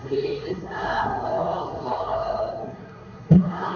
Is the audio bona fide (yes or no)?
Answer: no